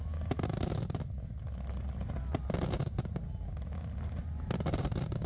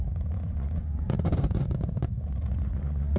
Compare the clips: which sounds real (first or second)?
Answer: first